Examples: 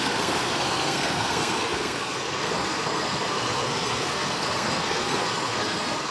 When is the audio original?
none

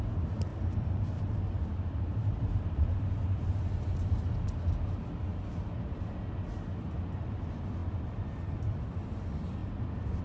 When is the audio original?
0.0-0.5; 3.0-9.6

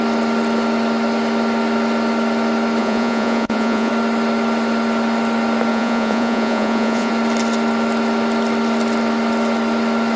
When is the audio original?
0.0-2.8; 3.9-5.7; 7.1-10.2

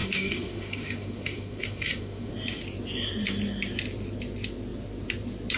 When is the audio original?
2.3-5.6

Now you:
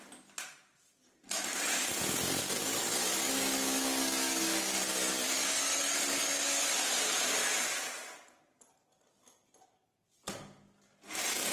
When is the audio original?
0.0-2.4; 6.6-11.5